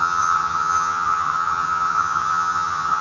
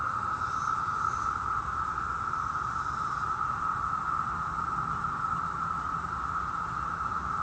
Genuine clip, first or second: second